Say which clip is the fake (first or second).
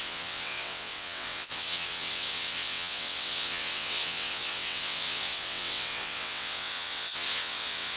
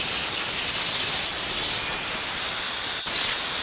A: first